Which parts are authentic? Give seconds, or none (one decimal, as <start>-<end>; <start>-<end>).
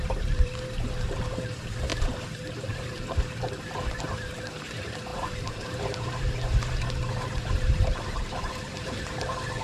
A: none